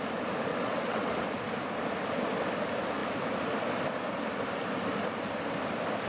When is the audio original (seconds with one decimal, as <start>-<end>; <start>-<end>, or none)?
0.0-0.5; 1.1-6.1